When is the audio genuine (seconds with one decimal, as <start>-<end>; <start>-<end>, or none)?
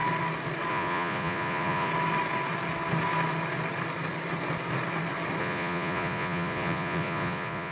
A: 0.0-0.7; 1.9-5.4